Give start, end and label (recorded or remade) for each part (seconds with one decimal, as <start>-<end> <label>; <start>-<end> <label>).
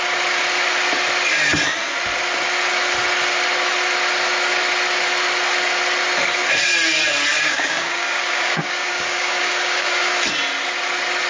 0.0-7.3 recorded; 7.3-10.2 remade; 10.2-11.3 recorded